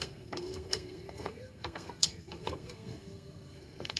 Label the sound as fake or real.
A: fake